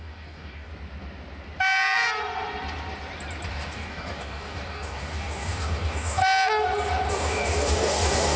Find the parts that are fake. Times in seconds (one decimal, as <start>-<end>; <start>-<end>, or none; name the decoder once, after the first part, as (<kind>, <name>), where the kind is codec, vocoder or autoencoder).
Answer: 0.0-0.7 (codec, DAC); 3.5-6.2; 7.1-8.4